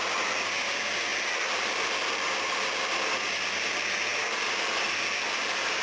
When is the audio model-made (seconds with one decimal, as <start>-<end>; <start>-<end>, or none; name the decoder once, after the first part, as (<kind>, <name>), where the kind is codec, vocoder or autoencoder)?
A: 1.1-2.3 (vocoder, BigVGAN v2)